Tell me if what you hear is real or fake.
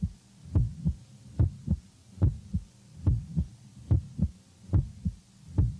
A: real